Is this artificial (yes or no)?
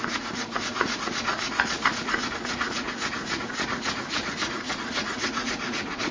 yes